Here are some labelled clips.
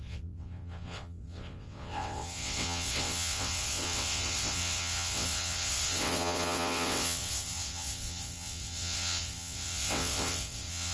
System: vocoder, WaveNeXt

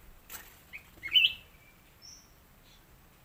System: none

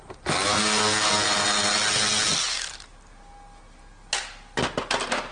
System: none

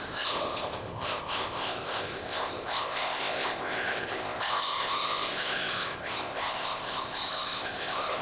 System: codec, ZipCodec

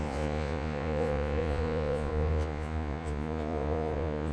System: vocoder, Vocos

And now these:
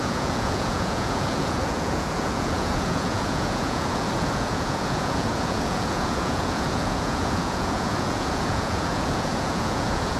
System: vocoder, Vocos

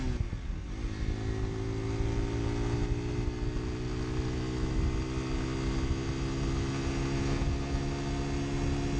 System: none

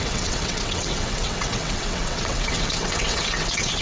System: vocoder, WaveNeXt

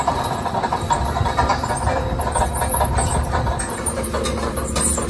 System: vocoder, BigVGAN v2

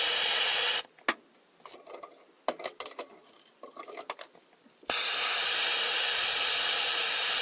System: none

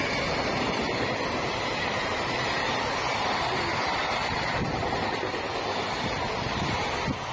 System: none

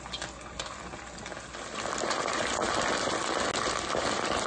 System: none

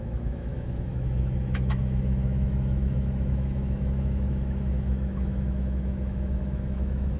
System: autoencoder, DAC-VAE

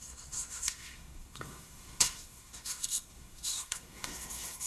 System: codec, SNAC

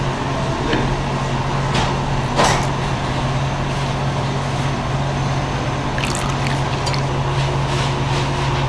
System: none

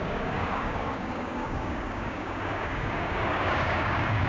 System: codec, DAC